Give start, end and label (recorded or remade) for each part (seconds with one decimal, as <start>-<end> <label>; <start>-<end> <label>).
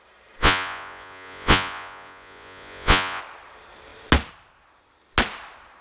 0.0-0.4 recorded; 0.4-3.2 remade; 3.2-5.8 recorded